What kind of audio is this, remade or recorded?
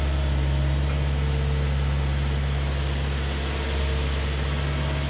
recorded